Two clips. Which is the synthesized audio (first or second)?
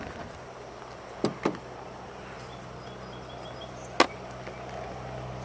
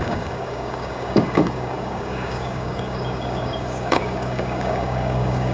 second